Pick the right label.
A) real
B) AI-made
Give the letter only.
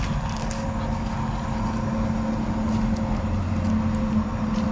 A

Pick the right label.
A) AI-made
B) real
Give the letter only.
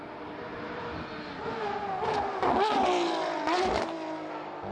B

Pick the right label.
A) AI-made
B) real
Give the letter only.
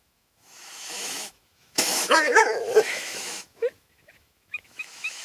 A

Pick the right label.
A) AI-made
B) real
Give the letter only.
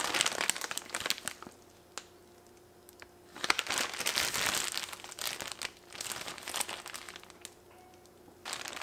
B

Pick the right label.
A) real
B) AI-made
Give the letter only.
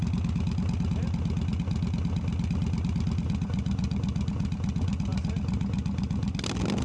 A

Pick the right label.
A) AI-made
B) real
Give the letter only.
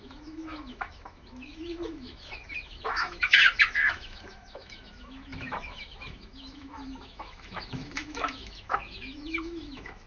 A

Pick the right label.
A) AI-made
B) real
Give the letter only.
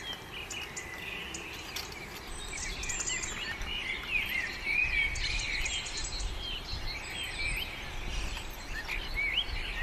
B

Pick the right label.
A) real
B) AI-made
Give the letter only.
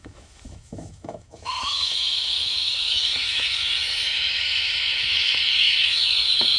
B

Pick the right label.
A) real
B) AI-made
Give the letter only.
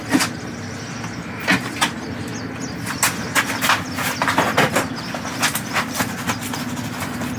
A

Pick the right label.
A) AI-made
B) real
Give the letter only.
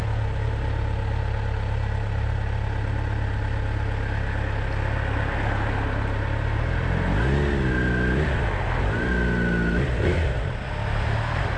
B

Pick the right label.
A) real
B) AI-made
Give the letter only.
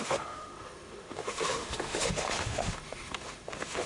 B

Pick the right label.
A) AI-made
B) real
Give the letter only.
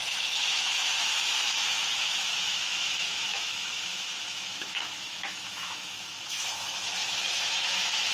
A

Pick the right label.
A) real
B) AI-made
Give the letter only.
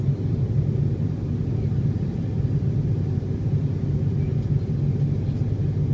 A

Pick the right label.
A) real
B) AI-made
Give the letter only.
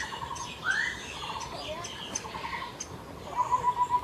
A